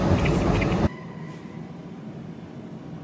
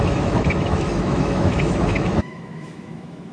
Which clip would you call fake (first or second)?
second